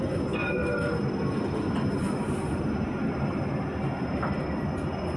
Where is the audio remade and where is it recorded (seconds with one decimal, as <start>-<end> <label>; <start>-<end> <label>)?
0.0-5.2 recorded